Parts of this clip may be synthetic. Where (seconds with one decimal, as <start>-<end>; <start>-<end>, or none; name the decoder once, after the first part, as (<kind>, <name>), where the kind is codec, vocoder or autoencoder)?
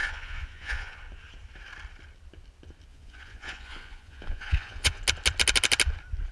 0.0-1.0 (vocoder, Vocos); 2.9-5.0